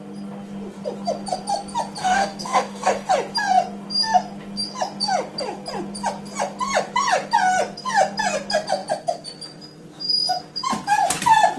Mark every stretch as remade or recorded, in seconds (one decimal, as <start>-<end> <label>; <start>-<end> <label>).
0.0-2.0 recorded; 2.0-3.1 remade; 3.1-11.6 recorded